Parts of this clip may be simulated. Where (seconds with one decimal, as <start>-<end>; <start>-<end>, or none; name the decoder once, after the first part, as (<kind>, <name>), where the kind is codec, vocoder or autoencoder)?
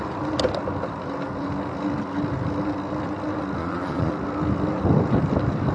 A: 3.6-4.1 (vocoder, Vocos)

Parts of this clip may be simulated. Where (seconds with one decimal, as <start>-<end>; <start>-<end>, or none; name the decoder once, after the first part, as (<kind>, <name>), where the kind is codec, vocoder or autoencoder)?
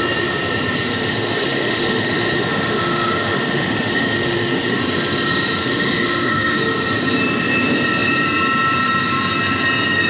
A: 0.9-4.8 (autoencoder, DAC-VAE); 5.6-6.6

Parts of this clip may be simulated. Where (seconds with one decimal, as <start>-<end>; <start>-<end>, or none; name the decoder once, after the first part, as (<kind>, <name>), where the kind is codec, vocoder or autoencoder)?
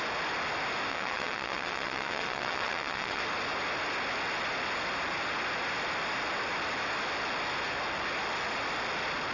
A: 0.9-3.2 (vocoder, WaveNeXt)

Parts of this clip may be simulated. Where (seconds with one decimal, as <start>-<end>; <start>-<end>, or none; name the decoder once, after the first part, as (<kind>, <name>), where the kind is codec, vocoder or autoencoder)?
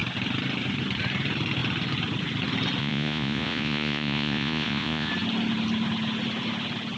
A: 2.8-5.1 (vocoder, Vocos)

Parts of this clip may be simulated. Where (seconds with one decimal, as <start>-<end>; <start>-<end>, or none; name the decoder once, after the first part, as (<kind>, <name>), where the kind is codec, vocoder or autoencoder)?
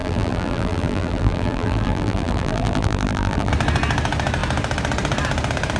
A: 0.0-3.5 (vocoder, BigVGAN v2)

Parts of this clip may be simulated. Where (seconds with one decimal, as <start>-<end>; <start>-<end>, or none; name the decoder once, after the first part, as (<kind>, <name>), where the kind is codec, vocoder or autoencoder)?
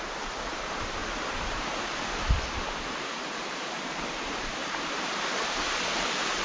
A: 0.0-6.4 (vocoder, BigVGAN v2)